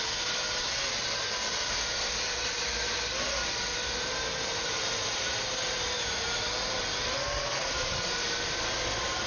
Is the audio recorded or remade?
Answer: recorded